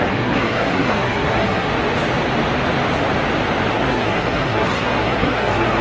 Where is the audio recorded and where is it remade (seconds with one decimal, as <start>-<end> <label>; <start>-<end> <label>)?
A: 0.0-1.7 remade; 1.7-3.7 recorded; 3.7-5.8 remade